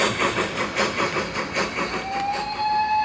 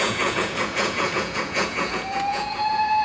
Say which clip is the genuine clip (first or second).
first